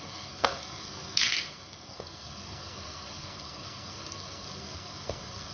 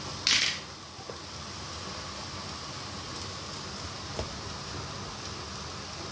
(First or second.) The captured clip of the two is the second